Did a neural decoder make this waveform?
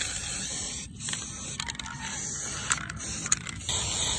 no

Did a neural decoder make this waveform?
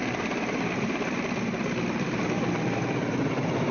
no